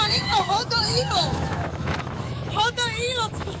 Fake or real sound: fake